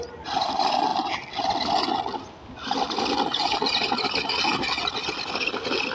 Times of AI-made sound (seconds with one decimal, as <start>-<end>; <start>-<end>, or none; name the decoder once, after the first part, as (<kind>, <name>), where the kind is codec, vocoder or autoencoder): none